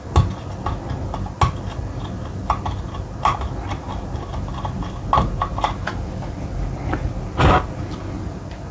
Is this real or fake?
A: real